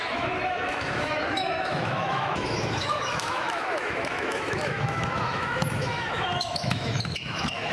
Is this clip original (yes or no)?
no